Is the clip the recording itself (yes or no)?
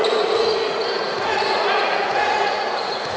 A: no